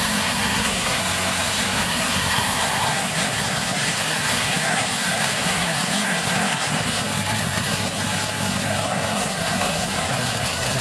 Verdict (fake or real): fake